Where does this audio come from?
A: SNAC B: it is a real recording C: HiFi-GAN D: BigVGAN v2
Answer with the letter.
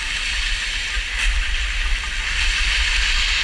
B